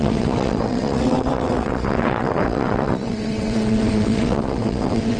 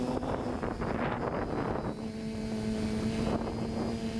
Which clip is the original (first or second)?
second